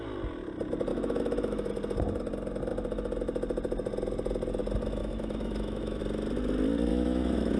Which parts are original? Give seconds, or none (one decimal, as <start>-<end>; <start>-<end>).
0.0-0.9; 1.7-5.0; 6.0-6.9